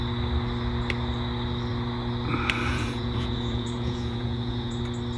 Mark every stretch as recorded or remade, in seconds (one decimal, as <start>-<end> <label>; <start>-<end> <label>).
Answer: 0.0-2.7 recorded; 2.7-4.8 remade; 4.8-5.2 recorded